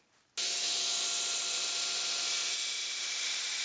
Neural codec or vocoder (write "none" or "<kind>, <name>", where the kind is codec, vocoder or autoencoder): none